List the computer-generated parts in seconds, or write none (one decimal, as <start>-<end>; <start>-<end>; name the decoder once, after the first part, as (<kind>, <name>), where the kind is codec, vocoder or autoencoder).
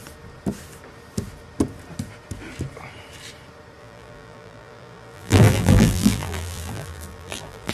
3.8-7.7 (vocoder, BigVGAN v2)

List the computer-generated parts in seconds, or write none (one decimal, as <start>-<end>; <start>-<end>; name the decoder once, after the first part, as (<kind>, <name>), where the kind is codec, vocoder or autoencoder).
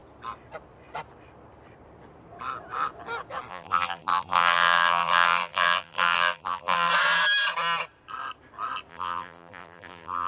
3.5-6.9 (vocoder, BigVGAN v2); 8.9-10.3